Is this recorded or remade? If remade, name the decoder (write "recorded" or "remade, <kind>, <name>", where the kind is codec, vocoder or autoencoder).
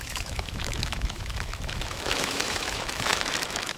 remade, autoencoder, DAC-VAE